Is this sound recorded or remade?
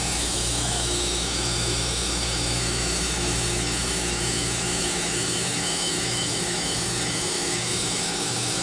remade